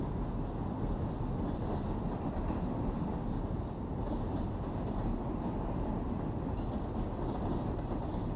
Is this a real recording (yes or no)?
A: yes